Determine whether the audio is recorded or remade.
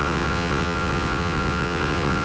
remade